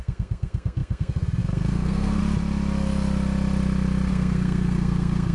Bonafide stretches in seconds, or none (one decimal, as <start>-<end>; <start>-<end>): 2.2-4.1

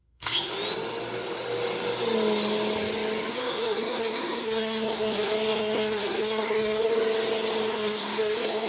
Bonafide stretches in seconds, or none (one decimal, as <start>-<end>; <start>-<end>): 0.5-3.3; 6.9-7.7

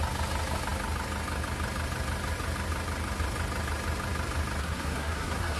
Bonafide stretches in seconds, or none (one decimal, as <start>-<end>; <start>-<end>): 0.0-4.6

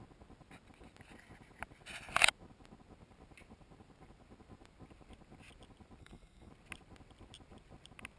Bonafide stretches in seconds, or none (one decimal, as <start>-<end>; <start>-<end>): 0.0-6.0; 6.5-8.2

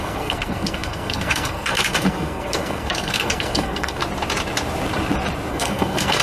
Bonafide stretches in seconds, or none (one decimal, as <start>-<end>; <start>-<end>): 4.0-5.5

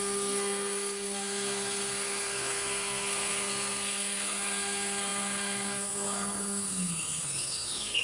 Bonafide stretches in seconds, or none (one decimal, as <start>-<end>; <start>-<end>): none